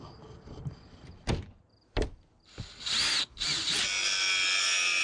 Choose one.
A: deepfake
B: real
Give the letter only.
B